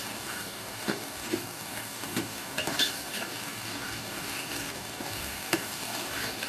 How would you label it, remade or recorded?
remade